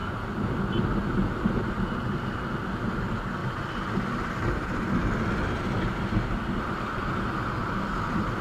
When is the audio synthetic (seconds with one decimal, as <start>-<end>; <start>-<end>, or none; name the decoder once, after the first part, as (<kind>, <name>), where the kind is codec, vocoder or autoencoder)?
none